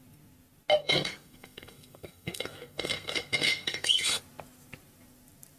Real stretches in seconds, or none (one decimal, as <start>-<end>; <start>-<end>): 0.0-0.8; 4.2-5.6